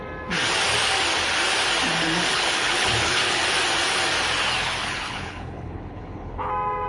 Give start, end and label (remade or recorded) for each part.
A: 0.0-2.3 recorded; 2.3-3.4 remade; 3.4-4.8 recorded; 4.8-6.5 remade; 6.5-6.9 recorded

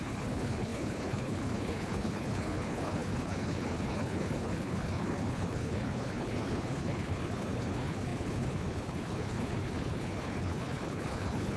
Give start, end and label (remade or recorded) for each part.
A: 0.0-11.6 remade

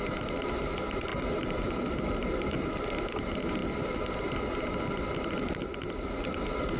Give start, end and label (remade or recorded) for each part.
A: 0.0-6.8 recorded

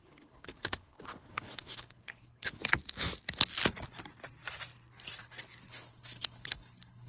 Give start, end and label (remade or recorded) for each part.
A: 0.0-2.6 remade; 2.6-5.7 recorded; 5.7-7.1 remade

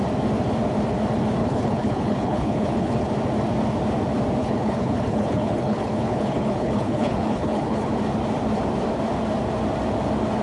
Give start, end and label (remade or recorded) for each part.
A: 0.0-1.4 recorded; 1.4-3.1 remade; 3.1-4.4 recorded; 4.4-7.9 remade; 7.9-10.4 recorded

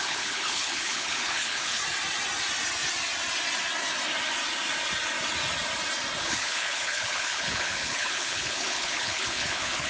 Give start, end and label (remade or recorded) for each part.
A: 0.0-1.8 remade; 1.8-6.2 recorded; 6.2-9.9 remade

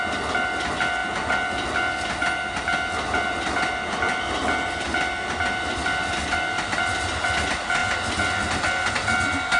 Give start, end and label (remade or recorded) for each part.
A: 0.0-9.6 recorded